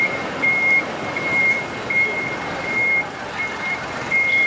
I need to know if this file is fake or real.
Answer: fake